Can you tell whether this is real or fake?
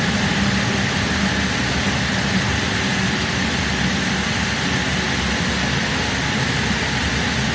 real